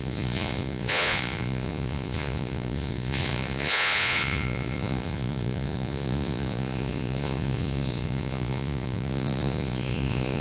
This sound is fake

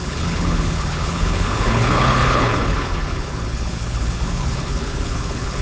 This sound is fake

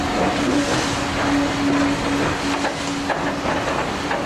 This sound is real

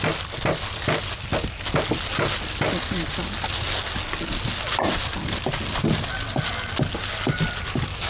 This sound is real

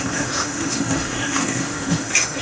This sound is fake